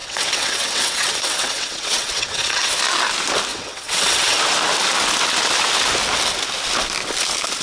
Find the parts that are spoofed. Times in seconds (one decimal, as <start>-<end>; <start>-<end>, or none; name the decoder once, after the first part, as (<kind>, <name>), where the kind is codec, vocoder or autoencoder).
0.0-2.8 (vocoder, WaveNeXt); 3.5-4.4